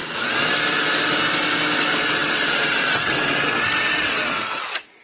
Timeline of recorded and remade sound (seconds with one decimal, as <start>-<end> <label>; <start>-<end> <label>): 0.0-2.2 recorded; 2.2-5.0 remade